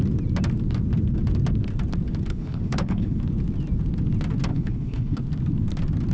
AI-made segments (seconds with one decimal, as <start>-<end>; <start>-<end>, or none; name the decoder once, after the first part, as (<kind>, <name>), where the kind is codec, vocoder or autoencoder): 2.3-3.2 (codec, HILCodec); 4.5-5.2